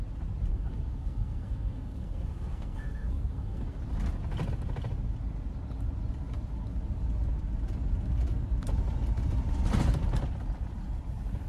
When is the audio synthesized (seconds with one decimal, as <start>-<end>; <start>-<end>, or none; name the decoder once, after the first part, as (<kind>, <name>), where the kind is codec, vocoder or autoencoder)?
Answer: 0.5-3.8 (codec, SNAC)